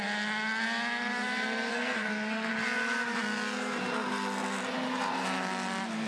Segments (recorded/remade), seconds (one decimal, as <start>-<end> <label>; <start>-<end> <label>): 0.0-1.7 recorded; 1.7-2.5 remade; 2.5-6.1 recorded